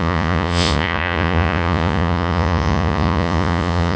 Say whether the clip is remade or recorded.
remade